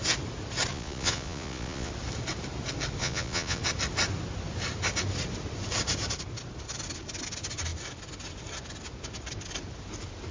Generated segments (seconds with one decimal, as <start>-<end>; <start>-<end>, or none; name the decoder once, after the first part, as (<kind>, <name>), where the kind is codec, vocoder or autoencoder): 0.7-1.9 (vocoder, Vocos); 3.0-3.6